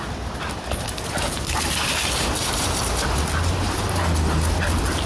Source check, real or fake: real